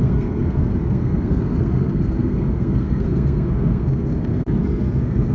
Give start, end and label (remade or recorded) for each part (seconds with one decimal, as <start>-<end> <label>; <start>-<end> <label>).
0.0-5.3 remade